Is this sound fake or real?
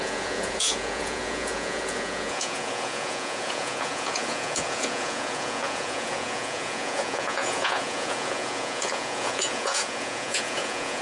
fake